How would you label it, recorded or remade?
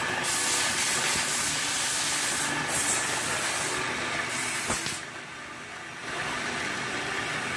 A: recorded